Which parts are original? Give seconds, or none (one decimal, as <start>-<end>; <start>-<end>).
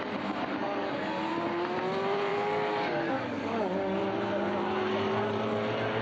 0.0-0.6; 1.3-2.3; 4.0-6.0